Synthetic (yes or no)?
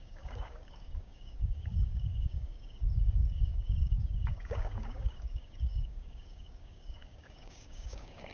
yes